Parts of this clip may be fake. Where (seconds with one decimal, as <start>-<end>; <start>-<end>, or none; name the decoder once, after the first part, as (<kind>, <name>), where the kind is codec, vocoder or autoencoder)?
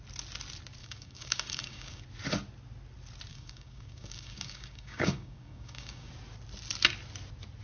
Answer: 0.8-2.0 (codec, DAC); 3.3-6.1